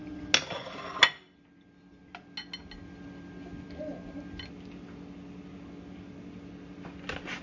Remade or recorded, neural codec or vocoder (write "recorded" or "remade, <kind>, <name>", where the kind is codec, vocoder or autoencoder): recorded